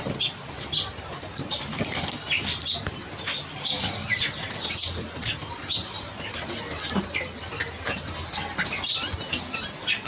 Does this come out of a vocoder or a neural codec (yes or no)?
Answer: no